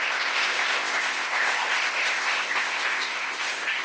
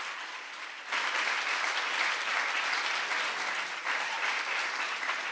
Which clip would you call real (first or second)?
second